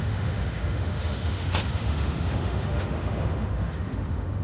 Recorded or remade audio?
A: remade